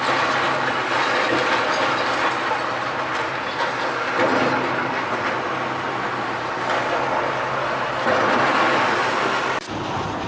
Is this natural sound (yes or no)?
yes